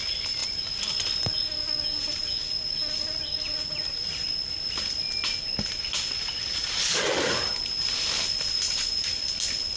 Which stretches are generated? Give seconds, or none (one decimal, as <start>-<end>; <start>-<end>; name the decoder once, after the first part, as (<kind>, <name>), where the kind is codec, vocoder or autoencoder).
6.6-7.2 (vocoder, Vocos)